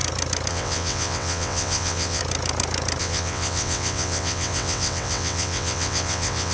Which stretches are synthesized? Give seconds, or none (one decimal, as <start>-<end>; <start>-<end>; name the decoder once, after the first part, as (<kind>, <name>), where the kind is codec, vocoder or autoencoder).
0.5-2.2 (vocoder, WaveNeXt); 3.0-6.5